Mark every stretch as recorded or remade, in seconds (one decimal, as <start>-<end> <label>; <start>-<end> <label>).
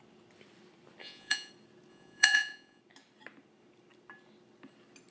0.0-1.0 recorded; 1.0-1.5 remade; 1.5-1.9 recorded; 1.9-2.8 remade; 2.8-5.1 recorded